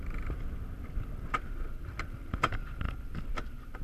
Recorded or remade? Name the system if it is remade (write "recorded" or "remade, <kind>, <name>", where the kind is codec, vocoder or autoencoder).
recorded